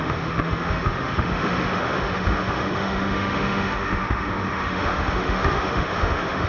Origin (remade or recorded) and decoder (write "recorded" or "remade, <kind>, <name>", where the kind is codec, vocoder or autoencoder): remade, autoencoder, DAC-VAE